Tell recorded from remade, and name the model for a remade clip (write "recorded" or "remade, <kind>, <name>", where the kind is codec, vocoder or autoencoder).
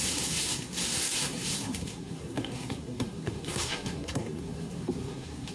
remade, codec, SNAC